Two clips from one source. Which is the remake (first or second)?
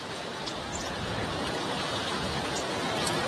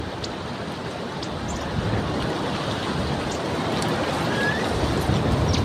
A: first